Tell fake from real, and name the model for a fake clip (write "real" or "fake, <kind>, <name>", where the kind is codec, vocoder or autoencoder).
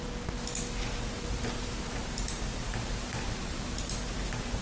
real